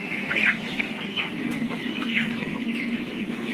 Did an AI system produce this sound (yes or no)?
yes